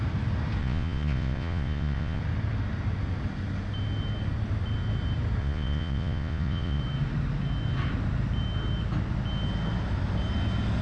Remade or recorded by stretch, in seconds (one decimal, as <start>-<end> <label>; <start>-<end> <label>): 0.0-0.6 recorded; 0.6-2.2 remade; 2.2-5.4 recorded; 5.4-6.8 remade; 6.8-10.8 recorded